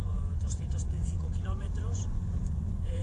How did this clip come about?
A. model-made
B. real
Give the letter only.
A